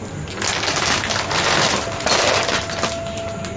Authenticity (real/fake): real